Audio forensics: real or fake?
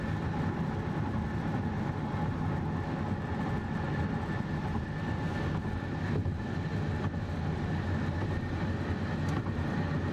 real